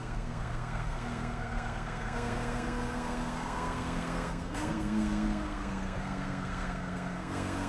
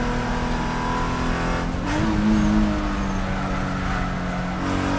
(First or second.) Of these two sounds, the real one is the second